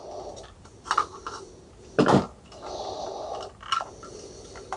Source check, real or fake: real